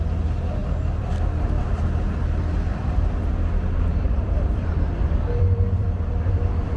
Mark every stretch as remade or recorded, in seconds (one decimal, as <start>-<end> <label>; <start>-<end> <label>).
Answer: 0.0-0.6 recorded; 0.6-1.2 remade; 1.2-2.7 recorded; 2.7-6.8 remade